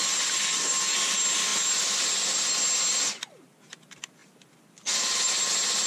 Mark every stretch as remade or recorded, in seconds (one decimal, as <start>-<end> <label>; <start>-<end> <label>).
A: 0.0-5.9 recorded